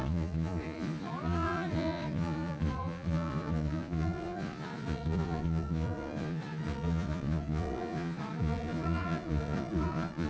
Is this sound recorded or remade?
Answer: remade